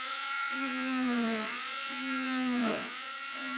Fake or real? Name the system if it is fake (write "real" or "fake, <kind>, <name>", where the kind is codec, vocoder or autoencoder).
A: fake, vocoder, Vocos